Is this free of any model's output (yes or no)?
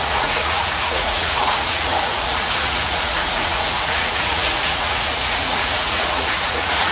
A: no